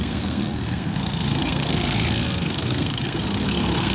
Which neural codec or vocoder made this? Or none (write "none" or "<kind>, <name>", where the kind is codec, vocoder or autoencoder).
codec, SNAC